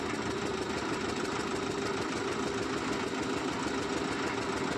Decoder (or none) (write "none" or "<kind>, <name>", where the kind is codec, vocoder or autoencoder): none